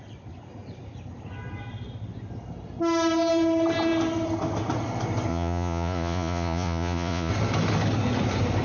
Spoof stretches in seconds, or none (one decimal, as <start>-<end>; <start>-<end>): 5.3-7.3